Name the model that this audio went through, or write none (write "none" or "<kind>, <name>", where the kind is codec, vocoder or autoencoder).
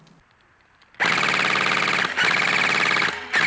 none